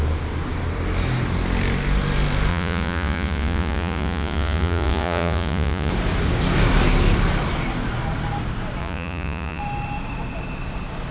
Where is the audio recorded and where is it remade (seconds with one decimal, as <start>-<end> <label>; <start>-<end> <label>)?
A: 0.0-2.5 recorded; 2.5-5.9 remade; 5.9-8.8 recorded; 8.8-9.6 remade; 9.6-11.1 recorded